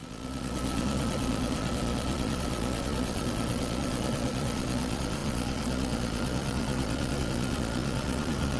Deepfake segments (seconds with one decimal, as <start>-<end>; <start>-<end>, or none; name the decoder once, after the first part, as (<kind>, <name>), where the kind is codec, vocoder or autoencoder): 0.0-8.6 (vocoder, Vocos)